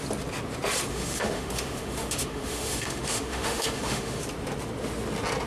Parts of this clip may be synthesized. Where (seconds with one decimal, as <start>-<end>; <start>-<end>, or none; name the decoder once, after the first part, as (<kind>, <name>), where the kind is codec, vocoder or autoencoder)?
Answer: 0.9-4.2 (autoencoder, DAC-VAE)